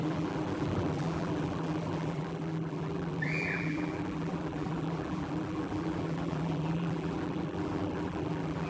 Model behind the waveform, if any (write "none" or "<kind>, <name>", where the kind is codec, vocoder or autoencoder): vocoder, BigVGAN v2